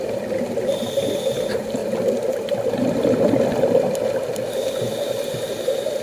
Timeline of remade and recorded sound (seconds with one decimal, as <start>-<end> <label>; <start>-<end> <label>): 0.0-6.0 recorded